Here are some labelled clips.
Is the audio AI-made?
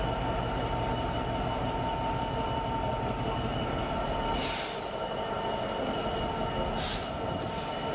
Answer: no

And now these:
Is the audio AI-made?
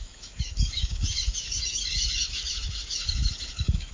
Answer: yes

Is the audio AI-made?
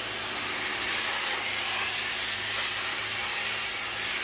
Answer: no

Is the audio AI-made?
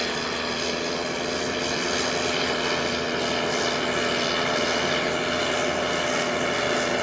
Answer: no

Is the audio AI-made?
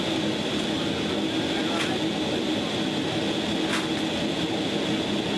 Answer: no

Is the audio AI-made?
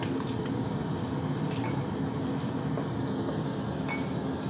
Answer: no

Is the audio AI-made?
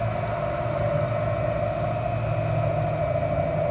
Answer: no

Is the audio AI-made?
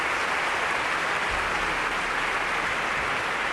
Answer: no